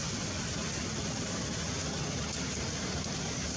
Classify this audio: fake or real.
real